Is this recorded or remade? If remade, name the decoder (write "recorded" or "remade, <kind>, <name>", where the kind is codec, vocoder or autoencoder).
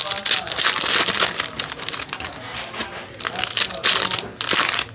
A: recorded